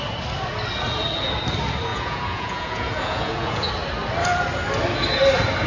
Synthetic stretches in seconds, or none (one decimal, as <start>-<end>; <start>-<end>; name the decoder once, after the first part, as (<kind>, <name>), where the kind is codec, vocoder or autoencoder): 1.9-3.7 (vocoder, Vocos)